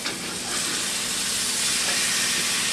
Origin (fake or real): real